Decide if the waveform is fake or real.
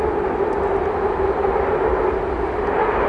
real